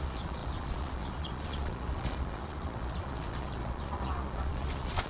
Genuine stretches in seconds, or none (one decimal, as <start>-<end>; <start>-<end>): none